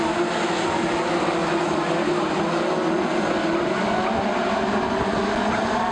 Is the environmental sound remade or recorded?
recorded